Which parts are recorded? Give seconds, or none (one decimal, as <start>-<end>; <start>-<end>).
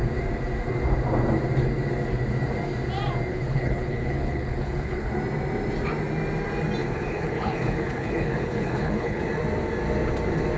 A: 0.0-3.3; 5.1-6.8; 9.2-10.6